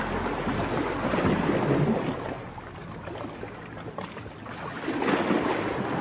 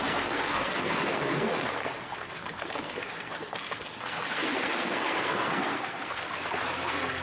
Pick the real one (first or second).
first